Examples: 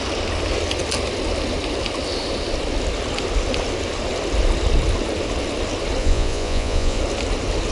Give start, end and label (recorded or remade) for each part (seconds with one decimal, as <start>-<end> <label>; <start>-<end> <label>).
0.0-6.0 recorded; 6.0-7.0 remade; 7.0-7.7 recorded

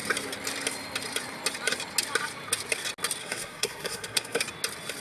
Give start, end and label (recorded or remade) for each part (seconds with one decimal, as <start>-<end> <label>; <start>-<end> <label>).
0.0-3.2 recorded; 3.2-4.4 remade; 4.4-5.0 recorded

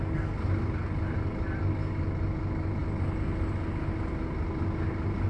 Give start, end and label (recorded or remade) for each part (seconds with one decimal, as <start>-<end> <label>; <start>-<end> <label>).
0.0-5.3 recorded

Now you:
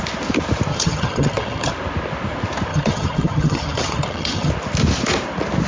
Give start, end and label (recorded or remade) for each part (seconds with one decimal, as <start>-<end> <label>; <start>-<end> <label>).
0.0-0.7 recorded; 0.7-1.7 remade; 1.7-2.7 recorded; 2.7-4.5 remade; 4.5-5.7 recorded

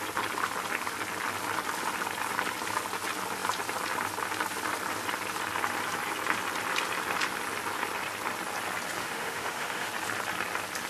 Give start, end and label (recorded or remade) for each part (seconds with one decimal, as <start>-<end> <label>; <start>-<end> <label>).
0.0-9.0 recorded; 9.0-9.9 remade; 9.9-10.9 recorded

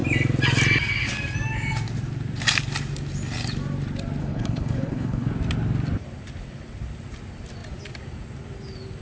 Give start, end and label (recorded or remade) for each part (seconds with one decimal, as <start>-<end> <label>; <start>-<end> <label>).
0.0-4.2 recorded; 4.2-5.3 remade; 5.3-9.0 recorded

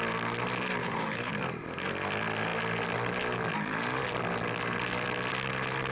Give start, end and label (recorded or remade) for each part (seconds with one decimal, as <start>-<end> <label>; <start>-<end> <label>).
0.0-0.8 recorded; 0.8-1.3 remade; 1.3-5.9 recorded